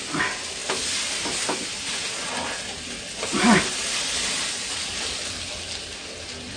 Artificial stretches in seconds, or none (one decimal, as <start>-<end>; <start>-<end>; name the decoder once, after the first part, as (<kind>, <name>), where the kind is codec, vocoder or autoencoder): none